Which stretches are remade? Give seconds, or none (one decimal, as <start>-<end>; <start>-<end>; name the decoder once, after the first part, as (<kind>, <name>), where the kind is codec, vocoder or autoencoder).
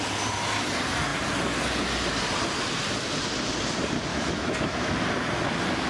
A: 4.1-4.9 (autoencoder, DAC-VAE)